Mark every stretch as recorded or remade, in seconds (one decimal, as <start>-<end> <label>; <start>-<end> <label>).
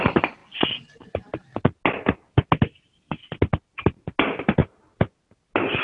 0.0-5.8 recorded